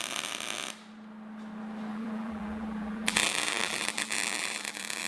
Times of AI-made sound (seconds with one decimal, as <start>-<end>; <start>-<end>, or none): 1.9-5.1